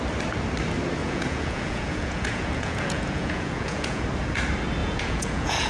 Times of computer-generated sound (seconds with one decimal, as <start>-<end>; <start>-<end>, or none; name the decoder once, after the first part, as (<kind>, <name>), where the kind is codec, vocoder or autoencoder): 1.0-4.0 (vocoder, Vocos); 4.8-5.7